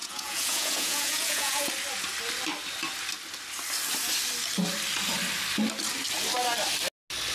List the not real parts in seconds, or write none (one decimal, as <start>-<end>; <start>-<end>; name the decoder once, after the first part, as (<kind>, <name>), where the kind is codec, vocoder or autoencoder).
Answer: 0.0-1.7 (vocoder, Vocos)